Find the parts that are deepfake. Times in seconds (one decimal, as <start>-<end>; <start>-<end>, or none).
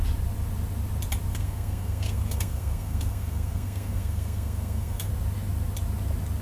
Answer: 1.3-5.1